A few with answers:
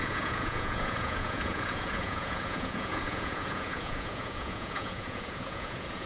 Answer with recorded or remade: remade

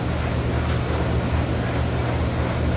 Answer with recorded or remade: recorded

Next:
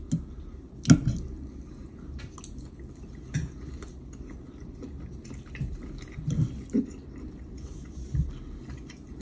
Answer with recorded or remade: recorded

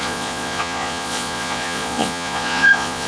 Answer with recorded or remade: remade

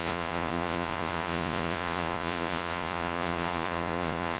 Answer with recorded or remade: remade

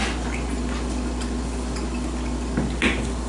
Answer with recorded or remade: recorded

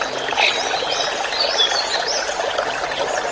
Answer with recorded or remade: recorded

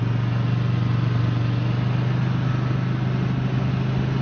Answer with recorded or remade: recorded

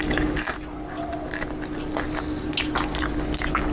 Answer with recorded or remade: recorded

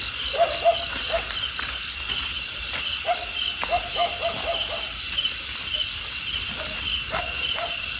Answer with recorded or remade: recorded